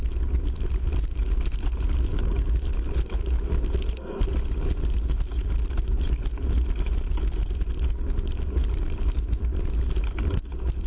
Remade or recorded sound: recorded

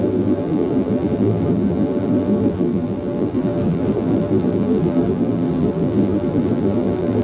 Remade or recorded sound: remade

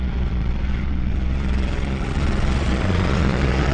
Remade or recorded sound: remade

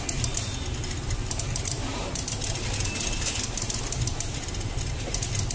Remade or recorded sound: recorded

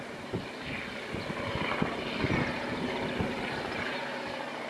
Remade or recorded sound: recorded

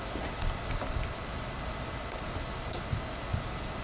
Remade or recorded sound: recorded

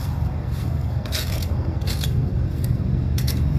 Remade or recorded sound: remade